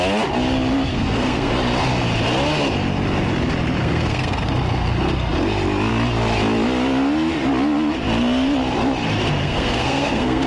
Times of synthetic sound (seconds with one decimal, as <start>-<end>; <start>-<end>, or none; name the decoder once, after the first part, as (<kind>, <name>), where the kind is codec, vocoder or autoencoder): 0.9-1.5 (codec, SNAC); 3.8-4.5; 9.4-10.5